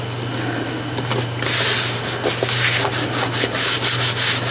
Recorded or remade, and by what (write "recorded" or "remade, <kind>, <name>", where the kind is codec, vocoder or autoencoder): recorded